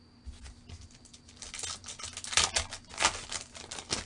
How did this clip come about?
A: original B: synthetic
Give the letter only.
A